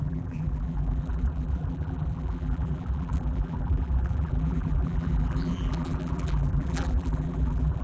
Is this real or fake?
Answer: fake